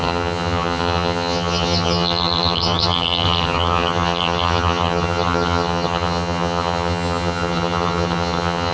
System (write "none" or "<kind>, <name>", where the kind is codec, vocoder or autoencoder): vocoder, HiFi-GAN